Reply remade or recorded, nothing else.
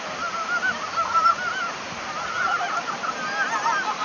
recorded